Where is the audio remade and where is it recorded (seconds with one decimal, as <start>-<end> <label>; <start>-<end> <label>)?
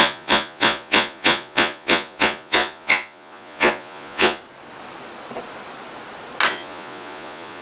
0.0-4.4 remade; 4.4-6.5 recorded; 6.5-7.6 remade